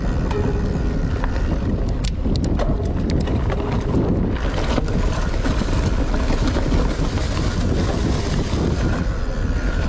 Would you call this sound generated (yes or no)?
no